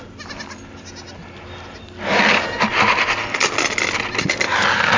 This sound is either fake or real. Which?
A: real